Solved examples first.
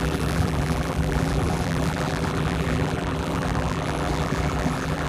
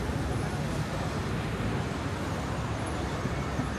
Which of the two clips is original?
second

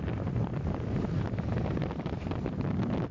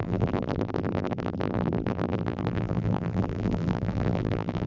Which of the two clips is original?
first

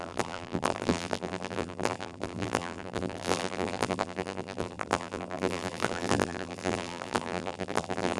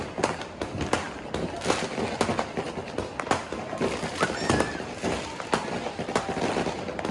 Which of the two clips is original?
second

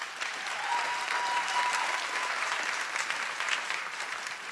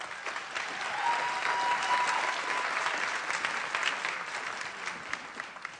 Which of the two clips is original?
second